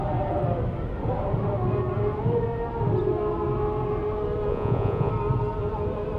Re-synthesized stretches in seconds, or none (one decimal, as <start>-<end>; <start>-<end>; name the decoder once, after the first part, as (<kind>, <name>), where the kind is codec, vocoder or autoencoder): 4.5-5.1 (vocoder, Vocos)